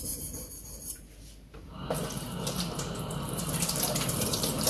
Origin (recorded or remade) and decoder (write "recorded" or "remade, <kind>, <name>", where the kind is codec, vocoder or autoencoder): remade, vocoder, BigVGAN v2